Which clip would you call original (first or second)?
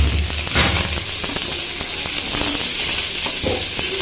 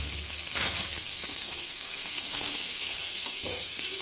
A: first